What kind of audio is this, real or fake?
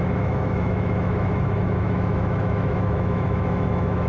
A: fake